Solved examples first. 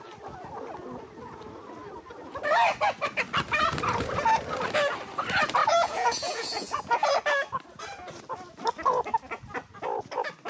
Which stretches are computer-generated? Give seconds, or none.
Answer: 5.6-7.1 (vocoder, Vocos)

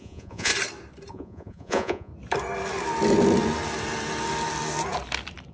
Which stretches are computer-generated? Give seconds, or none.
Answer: 0.0-0.5 (vocoder, Vocos); 1.1-2.1

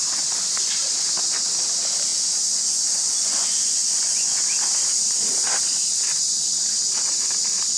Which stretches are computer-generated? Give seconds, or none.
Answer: 2.1-4.4 (vocoder, Vocos)

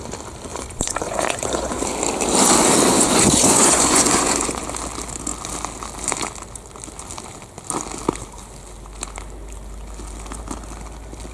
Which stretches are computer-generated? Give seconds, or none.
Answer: 0.5-1.8 (vocoder, Vocos); 2.9-4.6

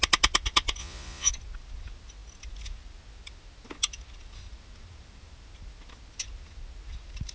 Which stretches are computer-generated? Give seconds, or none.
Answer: 0.8-1.3 (vocoder, Vocos)

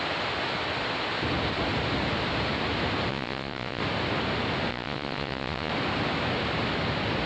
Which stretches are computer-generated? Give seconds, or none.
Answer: 3.1-3.8 (vocoder, Vocos); 4.7-5.7